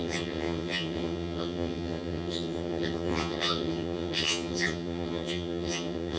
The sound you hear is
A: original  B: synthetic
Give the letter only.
B